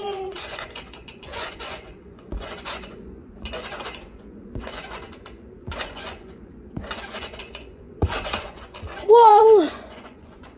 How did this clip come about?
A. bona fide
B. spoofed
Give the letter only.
B